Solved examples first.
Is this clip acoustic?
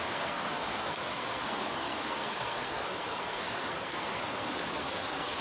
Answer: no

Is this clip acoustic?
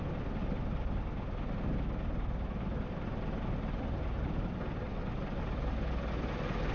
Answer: yes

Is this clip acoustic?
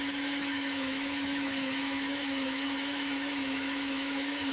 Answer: no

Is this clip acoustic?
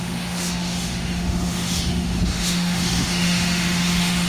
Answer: no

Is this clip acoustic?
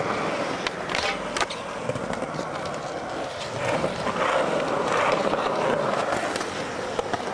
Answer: yes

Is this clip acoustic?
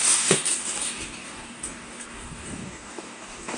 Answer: no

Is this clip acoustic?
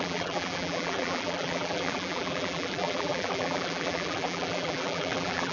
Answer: no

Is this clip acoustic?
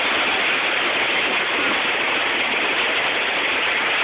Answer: yes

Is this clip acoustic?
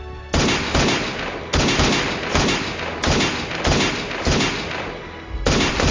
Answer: yes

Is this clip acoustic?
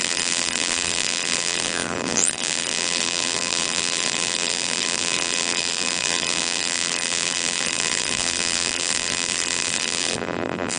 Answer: no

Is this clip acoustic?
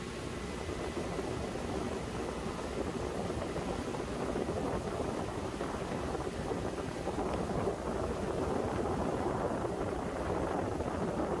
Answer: yes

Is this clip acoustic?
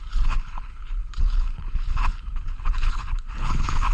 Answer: no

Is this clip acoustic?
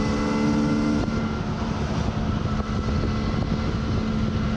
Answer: yes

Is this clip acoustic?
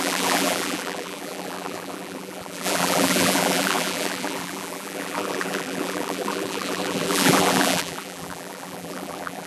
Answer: no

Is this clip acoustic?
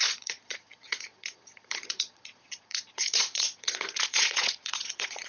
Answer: no